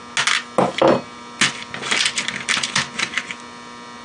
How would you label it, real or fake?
real